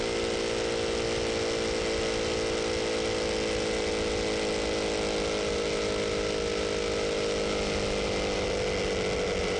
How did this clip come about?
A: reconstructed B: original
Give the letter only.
B